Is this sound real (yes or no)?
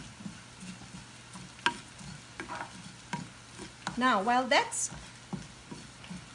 yes